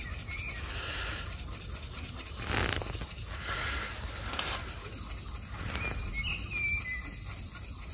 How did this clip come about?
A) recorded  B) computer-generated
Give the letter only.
A